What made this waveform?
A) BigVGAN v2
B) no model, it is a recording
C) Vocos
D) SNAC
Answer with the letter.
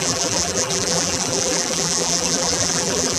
A